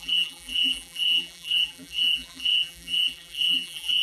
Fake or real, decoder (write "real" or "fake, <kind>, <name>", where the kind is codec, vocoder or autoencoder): fake, vocoder, BigVGAN v2